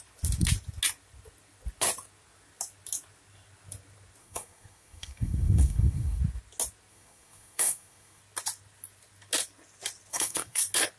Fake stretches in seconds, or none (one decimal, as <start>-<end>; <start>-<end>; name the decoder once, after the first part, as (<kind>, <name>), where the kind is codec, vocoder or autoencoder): 4.2-6.2 (codec, SNAC); 6.9-8.2; 10.1-10.6